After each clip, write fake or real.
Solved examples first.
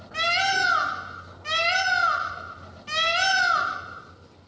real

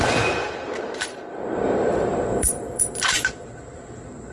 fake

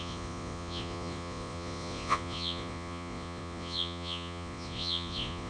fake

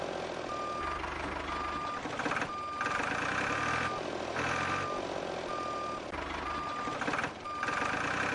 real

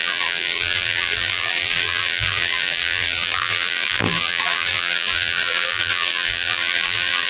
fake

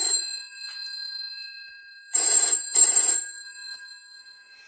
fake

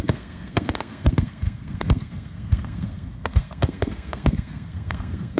fake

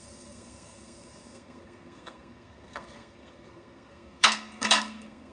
fake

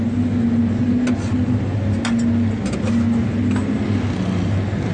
real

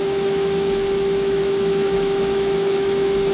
fake